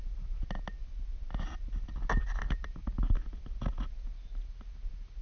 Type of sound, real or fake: real